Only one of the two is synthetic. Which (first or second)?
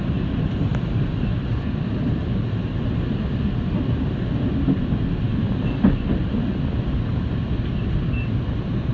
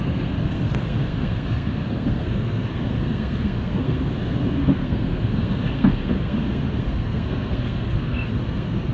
second